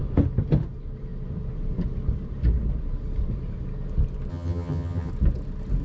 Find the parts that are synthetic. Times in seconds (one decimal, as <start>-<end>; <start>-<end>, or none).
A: 4.3-5.1